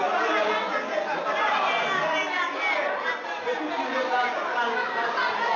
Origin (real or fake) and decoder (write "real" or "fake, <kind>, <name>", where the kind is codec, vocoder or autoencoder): real